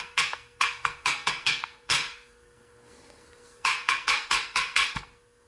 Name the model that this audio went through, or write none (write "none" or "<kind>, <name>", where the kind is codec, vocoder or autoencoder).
codec, SNAC